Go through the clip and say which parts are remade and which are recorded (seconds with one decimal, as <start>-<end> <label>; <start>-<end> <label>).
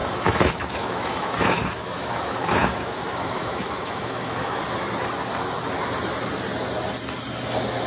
0.0-4.6 remade; 4.6-7.9 recorded